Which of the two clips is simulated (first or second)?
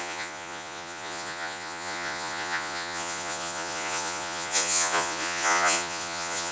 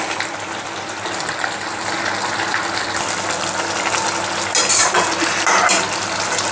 first